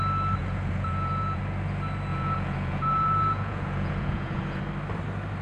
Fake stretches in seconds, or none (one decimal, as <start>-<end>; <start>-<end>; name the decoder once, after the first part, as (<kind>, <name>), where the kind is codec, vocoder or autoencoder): 0.4-1.4 (vocoder, Vocos); 2.1-4.6